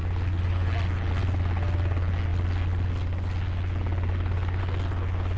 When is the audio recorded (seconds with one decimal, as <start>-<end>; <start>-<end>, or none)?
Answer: 0.0-5.4